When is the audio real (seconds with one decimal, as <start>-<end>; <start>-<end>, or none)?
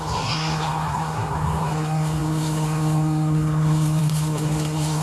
none